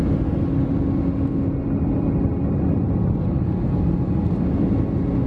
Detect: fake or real real